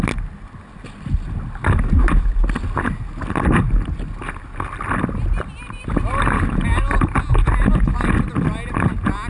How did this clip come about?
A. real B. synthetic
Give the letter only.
A